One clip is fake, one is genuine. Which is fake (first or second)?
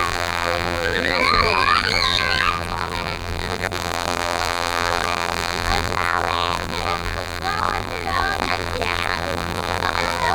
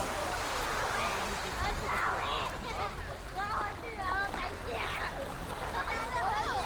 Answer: first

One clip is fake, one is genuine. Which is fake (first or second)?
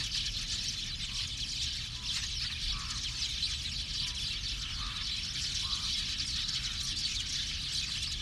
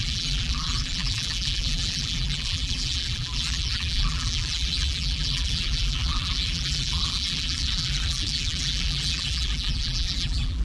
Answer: second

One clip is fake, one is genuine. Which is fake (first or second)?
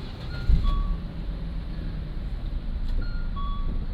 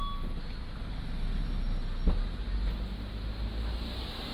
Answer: first